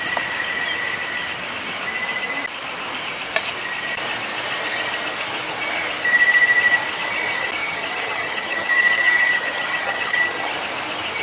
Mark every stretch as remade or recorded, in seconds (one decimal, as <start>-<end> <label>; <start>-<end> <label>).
0.0-7.6 recorded; 7.6-10.5 remade; 10.5-11.2 recorded